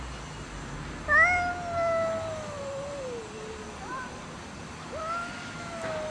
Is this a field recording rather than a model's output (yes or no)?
yes